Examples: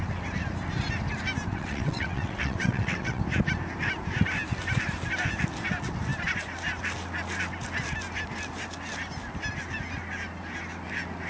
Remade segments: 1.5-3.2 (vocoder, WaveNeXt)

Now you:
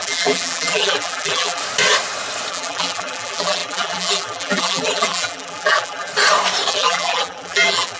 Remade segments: 0.0-1.6 (vocoder, BigVGAN v2); 2.5-6.1; 6.7-8.0

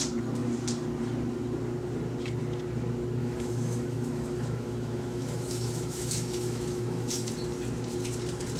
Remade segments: 3.2-7.3 (autoencoder, DAC-VAE)

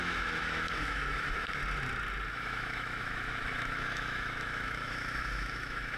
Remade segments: 0.0-1.6 (autoencoder, DAC-VAE); 2.3-6.0